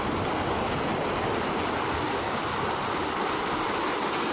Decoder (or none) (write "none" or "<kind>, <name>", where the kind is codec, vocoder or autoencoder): none